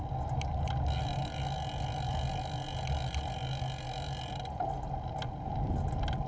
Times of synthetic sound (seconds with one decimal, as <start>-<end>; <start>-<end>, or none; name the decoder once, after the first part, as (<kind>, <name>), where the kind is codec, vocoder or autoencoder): none